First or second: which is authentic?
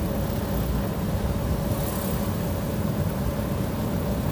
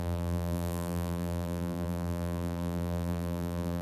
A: first